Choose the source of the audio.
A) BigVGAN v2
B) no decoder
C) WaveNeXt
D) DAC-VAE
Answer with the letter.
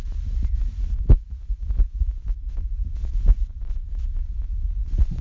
B